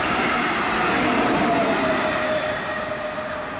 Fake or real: real